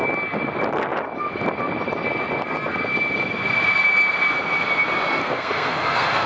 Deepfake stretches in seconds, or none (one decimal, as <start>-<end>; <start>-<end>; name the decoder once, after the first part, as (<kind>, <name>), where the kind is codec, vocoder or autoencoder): 5.2-6.3 (codec, SNAC)